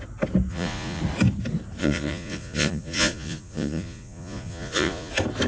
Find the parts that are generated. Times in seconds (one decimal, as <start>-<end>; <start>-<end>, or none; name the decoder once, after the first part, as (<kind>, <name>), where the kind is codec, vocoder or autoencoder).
0.5-1.0 (vocoder, Vocos); 1.8-5.1